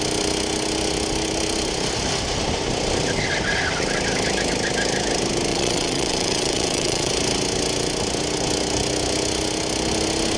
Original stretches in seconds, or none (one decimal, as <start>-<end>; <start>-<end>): 0.0-5.5; 7.1-10.4